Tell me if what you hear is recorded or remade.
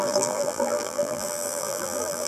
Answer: remade